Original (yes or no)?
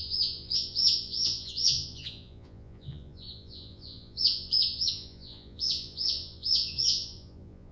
no